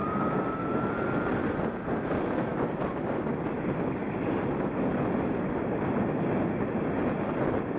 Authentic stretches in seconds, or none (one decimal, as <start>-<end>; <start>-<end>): 0.0-7.8